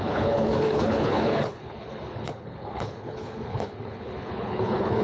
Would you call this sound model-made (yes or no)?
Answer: yes